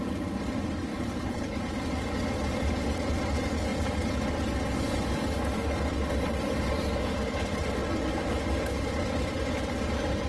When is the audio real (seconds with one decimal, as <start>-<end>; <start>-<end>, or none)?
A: 0.0-0.9; 1.6-10.3